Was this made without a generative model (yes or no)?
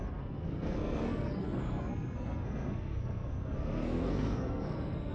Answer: no